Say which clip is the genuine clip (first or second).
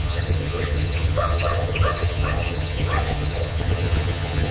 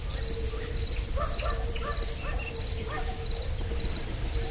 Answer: second